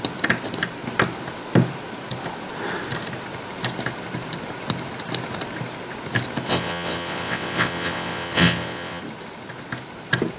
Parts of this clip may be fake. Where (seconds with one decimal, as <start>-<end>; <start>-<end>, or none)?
6.5-9.0